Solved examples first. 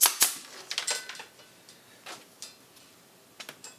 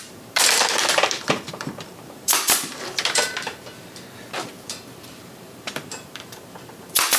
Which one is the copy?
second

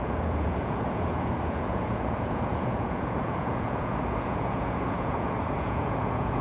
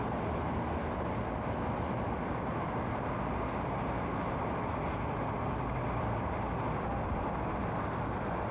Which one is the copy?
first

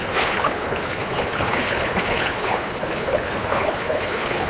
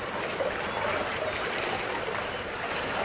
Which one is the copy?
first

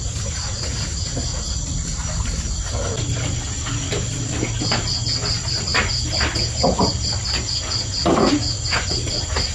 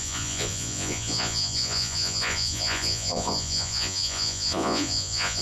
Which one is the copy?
second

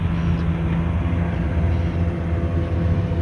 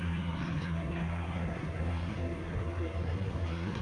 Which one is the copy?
second